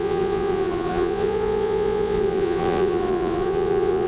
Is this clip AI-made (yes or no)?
yes